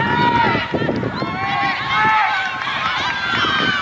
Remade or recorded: recorded